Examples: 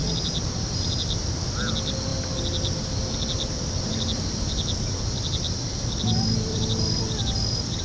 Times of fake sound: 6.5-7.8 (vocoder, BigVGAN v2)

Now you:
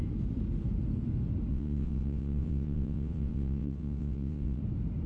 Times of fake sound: 1.5-4.6 (vocoder, WaveNeXt)

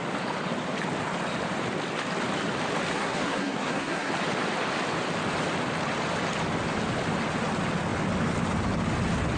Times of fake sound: 2.9-4.1 (codec, SNAC)

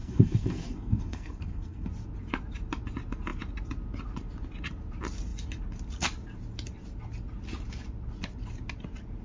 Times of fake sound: 0.0-1.9 (codec, SNAC)